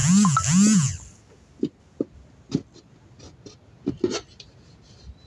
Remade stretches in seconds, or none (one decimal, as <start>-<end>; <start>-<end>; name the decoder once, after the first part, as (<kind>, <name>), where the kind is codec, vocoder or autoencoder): none